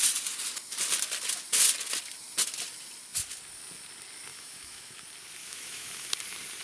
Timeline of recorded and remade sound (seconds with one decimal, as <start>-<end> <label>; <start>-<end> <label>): 0.0-4.3 recorded; 4.3-5.0 remade; 5.0-5.4 recorded; 5.4-6.1 remade; 6.1-6.6 recorded